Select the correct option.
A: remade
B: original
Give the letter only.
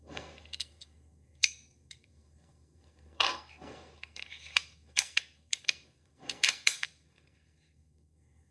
A